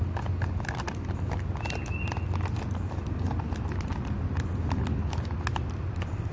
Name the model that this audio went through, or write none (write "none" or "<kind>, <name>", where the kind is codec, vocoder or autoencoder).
none